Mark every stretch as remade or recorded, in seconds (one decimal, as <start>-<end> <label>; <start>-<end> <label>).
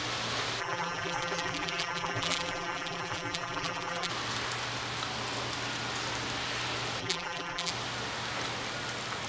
0.0-0.6 recorded; 0.6-4.1 remade; 4.1-7.0 recorded; 7.0-7.7 remade; 7.7-9.3 recorded